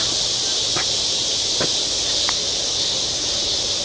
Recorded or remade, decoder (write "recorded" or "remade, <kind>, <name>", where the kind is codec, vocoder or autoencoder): recorded